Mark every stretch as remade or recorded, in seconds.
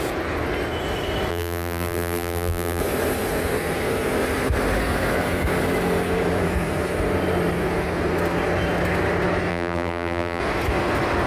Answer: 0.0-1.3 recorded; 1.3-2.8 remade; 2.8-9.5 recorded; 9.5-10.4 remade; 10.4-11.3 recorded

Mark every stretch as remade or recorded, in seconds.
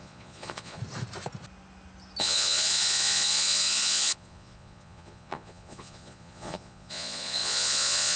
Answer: 0.0-0.8 remade; 0.8-2.2 recorded; 2.2-8.2 remade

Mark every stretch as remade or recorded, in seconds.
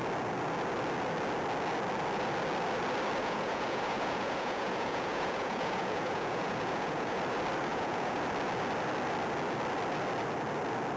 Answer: 0.0-3.2 recorded; 3.2-7.2 remade; 7.2-7.7 recorded; 7.7-8.2 remade; 8.2-11.0 recorded